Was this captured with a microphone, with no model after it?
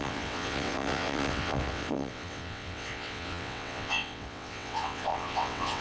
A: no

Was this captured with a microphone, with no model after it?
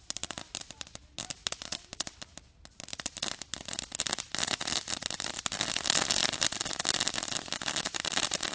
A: yes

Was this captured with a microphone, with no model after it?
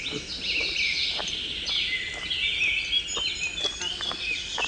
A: yes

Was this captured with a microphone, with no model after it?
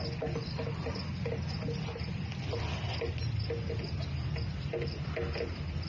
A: yes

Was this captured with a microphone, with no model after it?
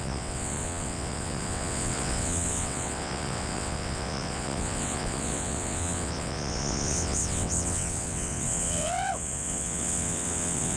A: no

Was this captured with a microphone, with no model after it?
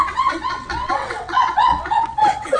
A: no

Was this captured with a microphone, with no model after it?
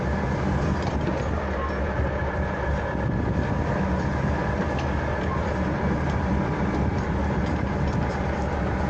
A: yes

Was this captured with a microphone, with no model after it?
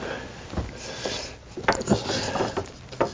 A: yes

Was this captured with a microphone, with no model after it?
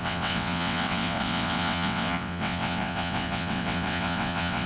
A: no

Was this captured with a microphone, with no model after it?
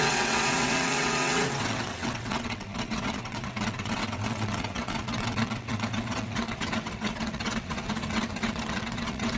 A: no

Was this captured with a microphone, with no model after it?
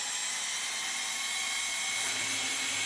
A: yes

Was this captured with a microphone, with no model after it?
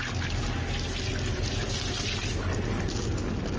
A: yes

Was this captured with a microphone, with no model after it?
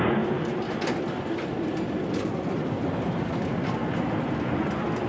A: yes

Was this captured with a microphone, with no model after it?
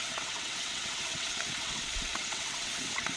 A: no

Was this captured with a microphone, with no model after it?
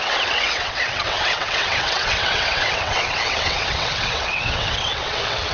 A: no